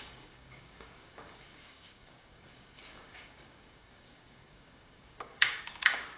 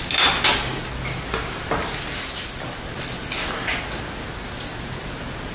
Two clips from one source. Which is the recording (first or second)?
second